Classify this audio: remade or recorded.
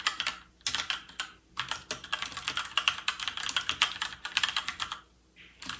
recorded